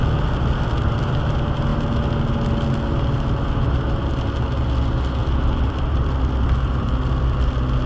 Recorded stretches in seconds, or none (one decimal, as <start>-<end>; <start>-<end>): 0.0-5.2; 7.5-7.9